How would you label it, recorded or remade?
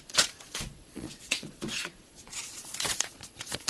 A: remade